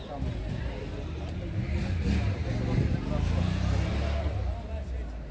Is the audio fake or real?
real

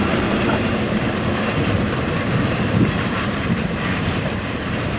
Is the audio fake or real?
fake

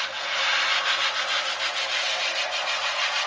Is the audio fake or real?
real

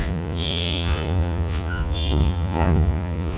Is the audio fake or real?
fake